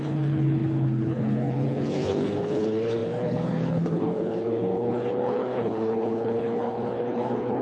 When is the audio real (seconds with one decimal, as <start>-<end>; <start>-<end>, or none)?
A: none